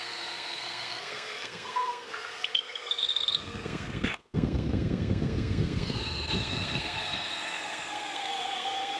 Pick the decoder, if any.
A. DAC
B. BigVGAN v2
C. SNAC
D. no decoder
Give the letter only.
C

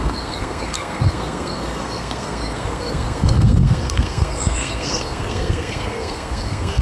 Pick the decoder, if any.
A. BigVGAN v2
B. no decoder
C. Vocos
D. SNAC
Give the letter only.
D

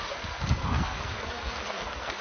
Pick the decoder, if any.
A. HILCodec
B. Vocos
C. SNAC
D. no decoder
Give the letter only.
C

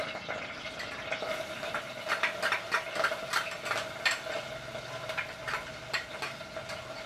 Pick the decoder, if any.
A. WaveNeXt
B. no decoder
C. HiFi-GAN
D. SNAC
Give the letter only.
B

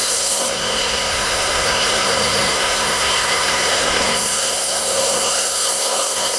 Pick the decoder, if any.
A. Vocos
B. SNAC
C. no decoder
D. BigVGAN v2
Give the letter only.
B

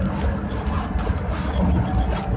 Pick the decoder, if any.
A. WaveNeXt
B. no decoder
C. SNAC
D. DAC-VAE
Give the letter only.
B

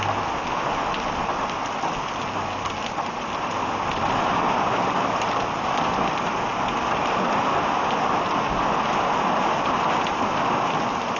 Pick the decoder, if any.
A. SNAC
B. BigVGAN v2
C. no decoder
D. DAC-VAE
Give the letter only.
C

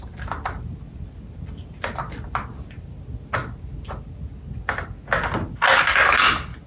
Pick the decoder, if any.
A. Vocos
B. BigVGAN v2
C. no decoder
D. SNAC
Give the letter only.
C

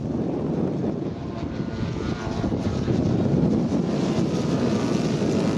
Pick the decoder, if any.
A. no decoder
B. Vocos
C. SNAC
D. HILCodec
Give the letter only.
A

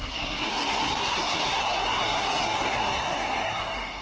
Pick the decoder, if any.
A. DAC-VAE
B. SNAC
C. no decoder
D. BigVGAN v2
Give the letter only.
B